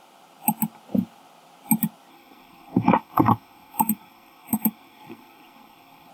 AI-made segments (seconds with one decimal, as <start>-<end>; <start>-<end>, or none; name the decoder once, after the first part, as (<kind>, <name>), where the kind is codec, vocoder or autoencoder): 2.1-6.1 (codec, SNAC)